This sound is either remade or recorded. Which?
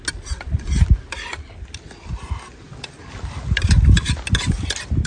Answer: recorded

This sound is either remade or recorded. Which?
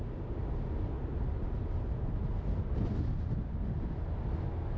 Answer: recorded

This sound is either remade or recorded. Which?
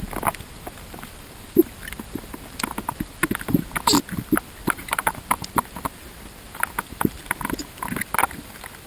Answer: recorded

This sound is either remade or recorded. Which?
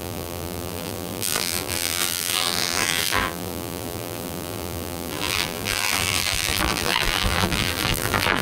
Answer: remade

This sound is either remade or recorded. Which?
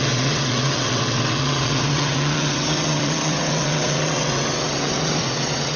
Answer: remade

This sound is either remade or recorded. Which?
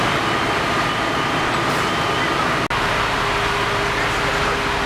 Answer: recorded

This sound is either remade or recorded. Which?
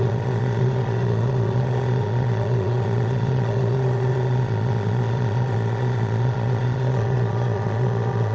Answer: remade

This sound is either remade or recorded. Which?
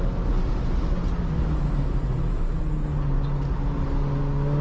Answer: recorded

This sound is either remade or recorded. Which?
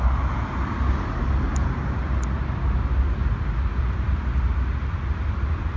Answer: recorded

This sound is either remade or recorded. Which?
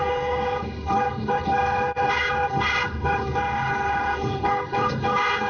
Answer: remade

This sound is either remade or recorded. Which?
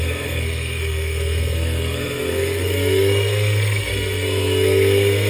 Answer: remade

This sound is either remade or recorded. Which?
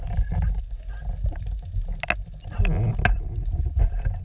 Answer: recorded